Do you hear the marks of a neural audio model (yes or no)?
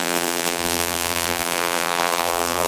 yes